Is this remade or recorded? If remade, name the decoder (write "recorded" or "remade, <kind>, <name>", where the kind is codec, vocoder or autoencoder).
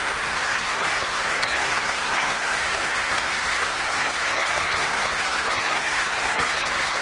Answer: remade, codec, SNAC